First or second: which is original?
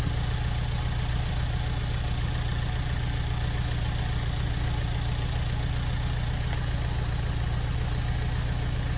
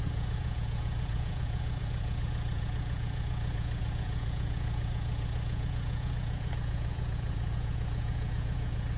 first